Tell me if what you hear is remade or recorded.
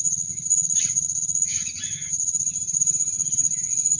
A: remade